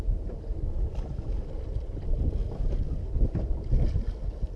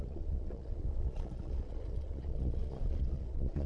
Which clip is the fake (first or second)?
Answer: second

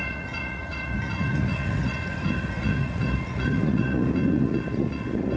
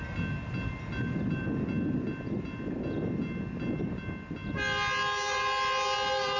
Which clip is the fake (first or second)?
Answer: first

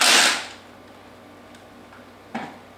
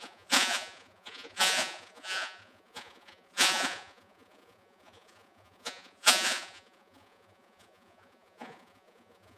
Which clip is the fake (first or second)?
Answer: second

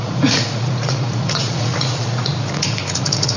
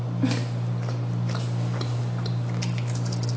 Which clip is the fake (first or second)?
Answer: first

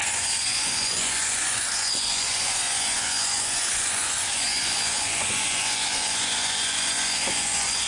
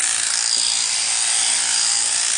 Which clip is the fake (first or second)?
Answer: first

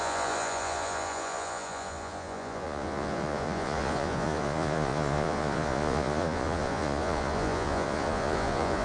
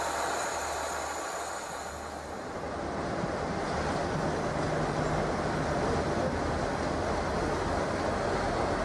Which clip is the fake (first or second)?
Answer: first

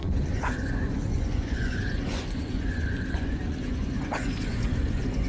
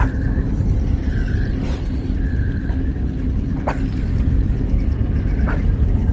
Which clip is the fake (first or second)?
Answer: first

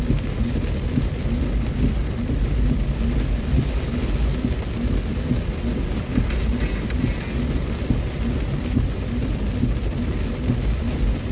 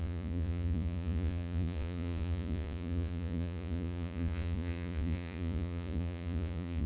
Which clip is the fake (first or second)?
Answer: second